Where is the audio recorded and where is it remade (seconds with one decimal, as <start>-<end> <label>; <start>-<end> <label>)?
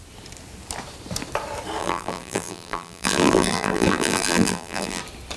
0.0-1.8 recorded; 1.8-5.0 remade; 5.0-5.4 recorded